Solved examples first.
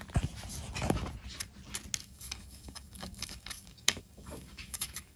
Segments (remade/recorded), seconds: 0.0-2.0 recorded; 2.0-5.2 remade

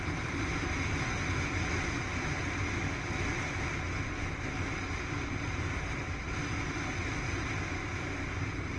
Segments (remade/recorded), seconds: 0.0-8.8 recorded

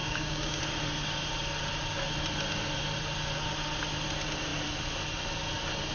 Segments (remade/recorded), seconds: 0.0-0.6 remade; 0.6-5.9 recorded